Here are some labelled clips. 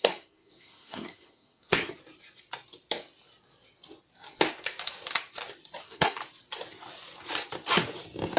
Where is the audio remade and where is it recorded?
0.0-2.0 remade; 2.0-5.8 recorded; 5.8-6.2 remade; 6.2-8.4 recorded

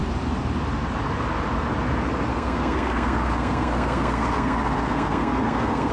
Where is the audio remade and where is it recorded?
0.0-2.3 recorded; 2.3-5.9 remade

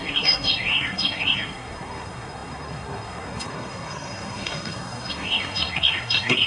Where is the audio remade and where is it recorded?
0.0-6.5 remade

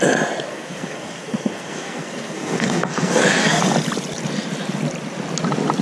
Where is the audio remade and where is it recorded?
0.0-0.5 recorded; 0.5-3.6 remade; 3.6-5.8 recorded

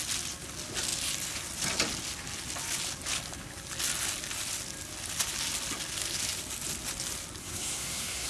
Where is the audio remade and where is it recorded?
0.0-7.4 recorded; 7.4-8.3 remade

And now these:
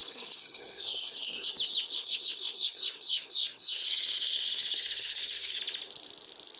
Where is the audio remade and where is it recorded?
0.0-1.5 remade; 1.5-1.9 recorded; 1.9-5.6 remade; 5.6-6.6 recorded

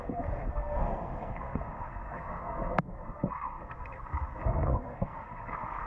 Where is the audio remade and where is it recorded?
0.0-5.9 remade